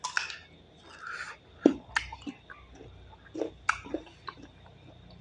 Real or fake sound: real